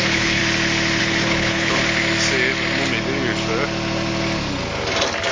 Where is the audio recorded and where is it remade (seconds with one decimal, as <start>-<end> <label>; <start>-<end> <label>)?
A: 0.0-0.4 remade; 0.4-1.0 recorded; 1.0-1.8 remade; 1.8-5.3 recorded